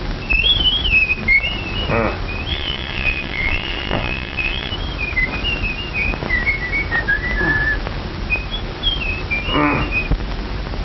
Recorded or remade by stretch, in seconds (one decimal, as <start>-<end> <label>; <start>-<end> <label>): 0.0-2.5 recorded; 2.5-4.7 remade; 4.7-10.8 recorded